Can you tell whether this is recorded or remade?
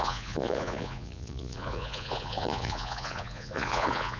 remade